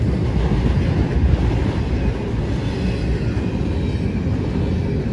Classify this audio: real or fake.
real